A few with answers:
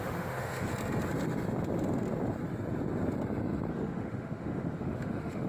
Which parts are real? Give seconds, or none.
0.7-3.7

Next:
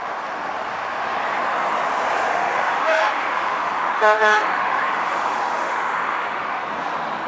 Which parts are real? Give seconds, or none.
0.0-2.3; 6.7-7.3

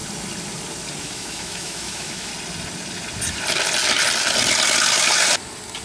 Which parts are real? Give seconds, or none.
0.0-1.0; 2.3-5.8